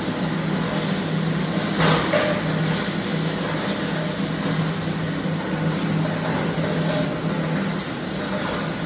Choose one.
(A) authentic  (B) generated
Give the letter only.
A